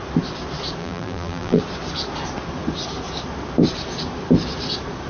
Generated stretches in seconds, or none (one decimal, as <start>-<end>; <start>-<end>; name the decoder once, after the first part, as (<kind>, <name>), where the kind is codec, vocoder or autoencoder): 0.8-1.6 (vocoder, BigVGAN v2)